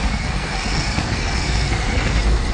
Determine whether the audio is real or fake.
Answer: fake